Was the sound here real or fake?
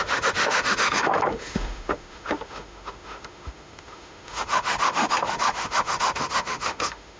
fake